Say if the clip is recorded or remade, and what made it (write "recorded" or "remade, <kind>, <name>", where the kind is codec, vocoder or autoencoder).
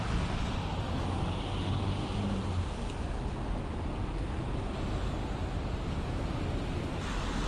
recorded